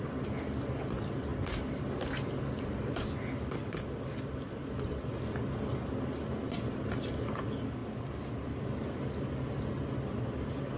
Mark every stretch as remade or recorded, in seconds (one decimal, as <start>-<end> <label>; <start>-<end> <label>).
0.0-10.8 recorded